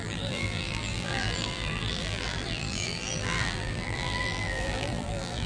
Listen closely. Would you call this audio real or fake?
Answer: fake